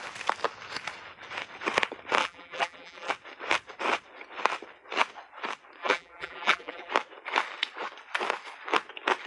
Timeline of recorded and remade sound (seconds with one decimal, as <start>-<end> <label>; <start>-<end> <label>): 0.0-2.2 recorded; 2.2-3.1 remade; 3.1-5.8 recorded; 5.8-6.9 remade; 6.9-9.3 recorded